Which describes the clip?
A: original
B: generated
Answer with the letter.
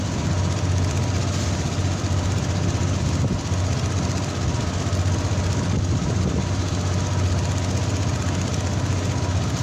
A